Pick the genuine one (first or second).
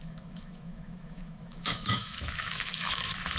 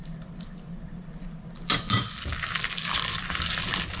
second